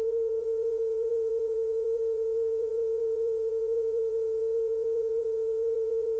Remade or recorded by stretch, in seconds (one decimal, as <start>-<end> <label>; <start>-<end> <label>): 0.0-6.2 remade